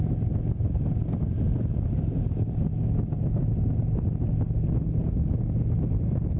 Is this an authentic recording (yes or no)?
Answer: yes